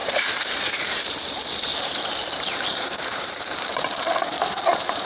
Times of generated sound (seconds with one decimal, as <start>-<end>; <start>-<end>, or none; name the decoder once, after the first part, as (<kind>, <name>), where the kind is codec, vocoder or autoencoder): 0.0-5.0 (vocoder, BigVGAN v2)